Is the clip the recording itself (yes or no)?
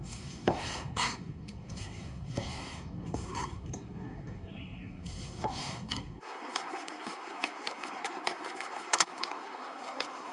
no